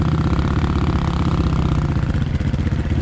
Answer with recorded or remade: recorded